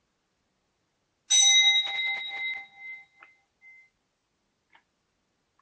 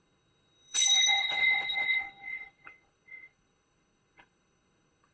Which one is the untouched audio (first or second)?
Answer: first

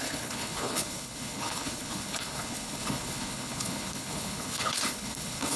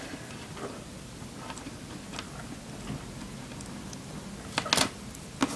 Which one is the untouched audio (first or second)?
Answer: second